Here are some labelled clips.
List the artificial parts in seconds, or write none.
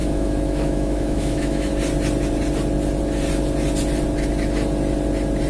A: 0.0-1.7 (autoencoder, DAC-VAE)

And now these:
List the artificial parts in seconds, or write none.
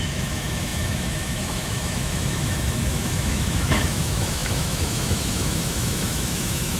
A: 0.0-6.8 (autoencoder, DAC-VAE)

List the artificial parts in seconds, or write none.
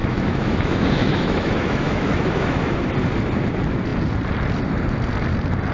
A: 0.0-2.8 (autoencoder, DAC-VAE)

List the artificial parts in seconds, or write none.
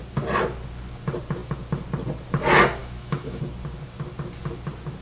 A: 2.8-3.4 (autoencoder, DAC-VAE)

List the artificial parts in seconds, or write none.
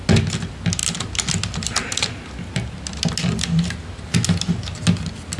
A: none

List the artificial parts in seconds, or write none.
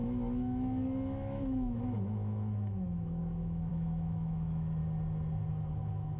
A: 0.0-4.8 (autoencoder, DAC-VAE); 5.5-6.2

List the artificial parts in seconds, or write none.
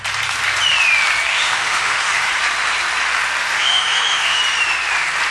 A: 1.3-2.3 (autoencoder, DAC-VAE); 3.4-4.4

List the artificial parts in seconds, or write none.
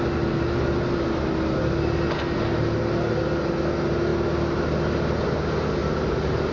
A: none